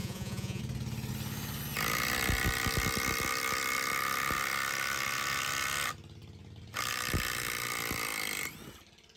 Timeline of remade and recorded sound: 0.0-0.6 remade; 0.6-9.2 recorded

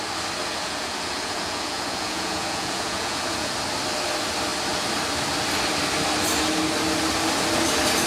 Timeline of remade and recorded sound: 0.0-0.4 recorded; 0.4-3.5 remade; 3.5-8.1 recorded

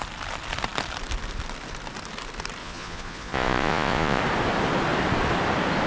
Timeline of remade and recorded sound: 0.0-2.6 recorded; 2.6-4.2 remade; 4.2-5.9 recorded